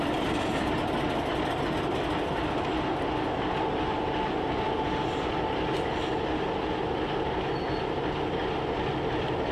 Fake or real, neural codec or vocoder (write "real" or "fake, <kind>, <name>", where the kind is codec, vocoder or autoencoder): real